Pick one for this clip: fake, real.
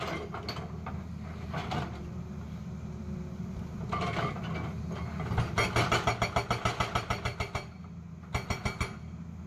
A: real